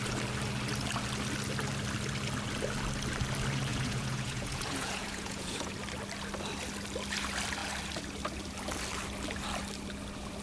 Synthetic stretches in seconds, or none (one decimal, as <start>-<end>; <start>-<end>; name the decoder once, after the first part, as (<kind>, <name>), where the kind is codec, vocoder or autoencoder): 3.7-5.7 (vocoder, Vocos)